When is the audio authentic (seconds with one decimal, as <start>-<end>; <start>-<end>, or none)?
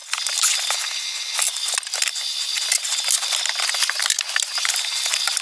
0.0-5.4